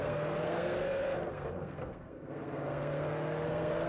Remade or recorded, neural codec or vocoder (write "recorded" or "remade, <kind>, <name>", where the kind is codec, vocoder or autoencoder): remade, codec, SNAC